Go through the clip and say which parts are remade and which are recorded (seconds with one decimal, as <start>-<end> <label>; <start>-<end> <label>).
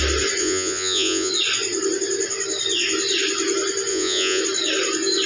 0.0-0.4 recorded; 0.4-1.3 remade; 1.3-3.9 recorded; 3.9-4.4 remade; 4.4-5.3 recorded